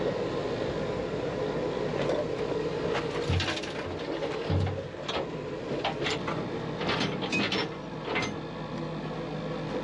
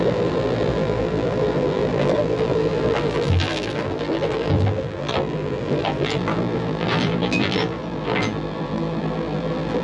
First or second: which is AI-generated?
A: second